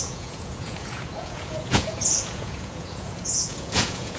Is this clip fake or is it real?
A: fake